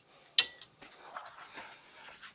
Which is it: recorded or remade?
recorded